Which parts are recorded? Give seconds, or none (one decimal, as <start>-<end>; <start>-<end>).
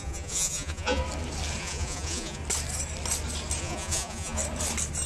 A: 1.0-1.6; 2.4-3.6; 4.4-5.1